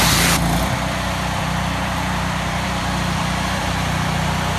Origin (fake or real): fake